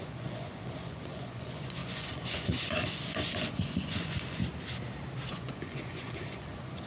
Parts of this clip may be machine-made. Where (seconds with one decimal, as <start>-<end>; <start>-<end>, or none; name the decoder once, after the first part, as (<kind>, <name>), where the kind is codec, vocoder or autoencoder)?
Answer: 0.0-4.4 (vocoder, Vocos); 5.3-6.9